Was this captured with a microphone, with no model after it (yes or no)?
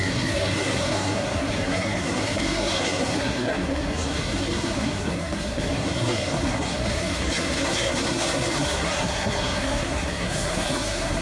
no